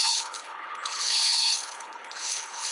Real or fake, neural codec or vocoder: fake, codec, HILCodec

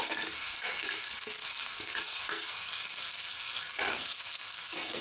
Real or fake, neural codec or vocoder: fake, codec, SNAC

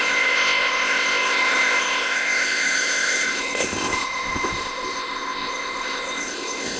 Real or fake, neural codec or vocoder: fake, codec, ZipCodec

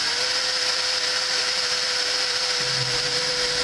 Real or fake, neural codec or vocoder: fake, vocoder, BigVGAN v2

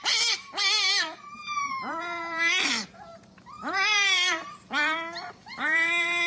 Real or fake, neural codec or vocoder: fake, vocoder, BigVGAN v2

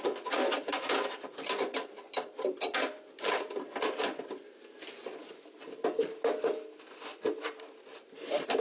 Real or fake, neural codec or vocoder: real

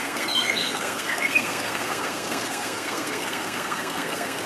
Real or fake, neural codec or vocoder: fake, codec, SNAC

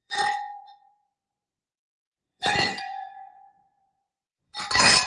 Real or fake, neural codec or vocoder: fake, vocoder, Vocos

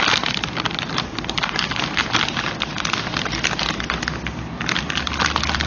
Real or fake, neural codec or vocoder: real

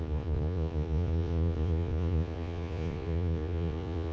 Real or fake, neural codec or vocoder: fake, vocoder, Vocos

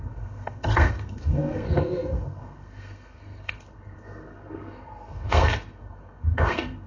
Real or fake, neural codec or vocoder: fake, codec, SNAC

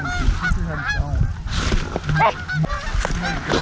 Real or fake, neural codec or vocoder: real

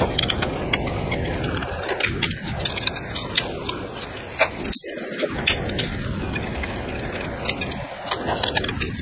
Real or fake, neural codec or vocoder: real